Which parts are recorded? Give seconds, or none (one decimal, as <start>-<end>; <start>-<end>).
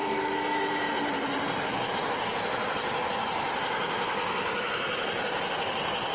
0.0-6.1